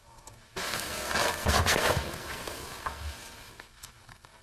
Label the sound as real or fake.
fake